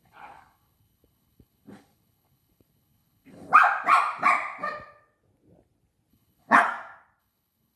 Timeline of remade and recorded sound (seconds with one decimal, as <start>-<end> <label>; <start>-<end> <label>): 0.0-3.5 remade; 3.5-6.1 recorded; 6.1-6.7 remade; 6.7-7.2 recorded; 7.2-7.8 remade